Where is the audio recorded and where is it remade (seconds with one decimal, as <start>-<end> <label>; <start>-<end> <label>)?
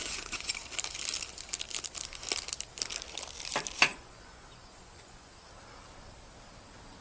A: 0.0-0.5 remade; 0.5-3.9 recorded; 3.9-5.3 remade; 5.3-7.0 recorded